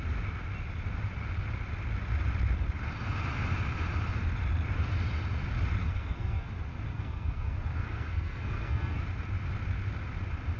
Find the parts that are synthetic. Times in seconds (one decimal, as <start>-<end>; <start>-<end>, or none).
5.8-6.5; 6.9-9.0